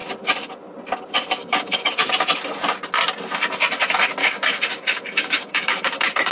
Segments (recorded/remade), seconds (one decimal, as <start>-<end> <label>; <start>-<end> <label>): 0.0-1.4 recorded; 1.4-1.9 remade; 1.9-4.2 recorded; 4.2-6.3 remade